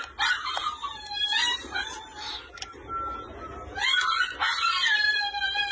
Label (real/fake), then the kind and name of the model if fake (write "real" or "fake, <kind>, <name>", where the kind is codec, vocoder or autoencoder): real